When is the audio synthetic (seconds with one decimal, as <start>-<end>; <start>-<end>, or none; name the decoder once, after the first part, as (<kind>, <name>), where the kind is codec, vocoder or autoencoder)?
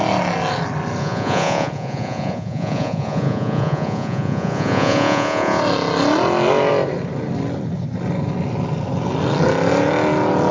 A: 1.0-5.6 (vocoder, Vocos)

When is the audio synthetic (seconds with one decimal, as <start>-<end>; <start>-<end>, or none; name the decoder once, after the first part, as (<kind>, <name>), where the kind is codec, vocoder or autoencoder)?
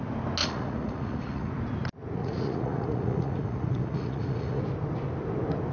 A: 0.4-1.5 (vocoder, Vocos); 2.2-4.6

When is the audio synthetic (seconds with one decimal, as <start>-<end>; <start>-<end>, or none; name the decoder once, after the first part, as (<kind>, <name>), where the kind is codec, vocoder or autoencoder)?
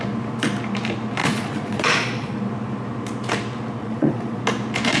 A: 1.2-2.4 (vocoder, Vocos); 3.8-4.4